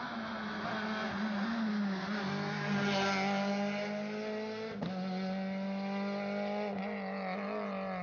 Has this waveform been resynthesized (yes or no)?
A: no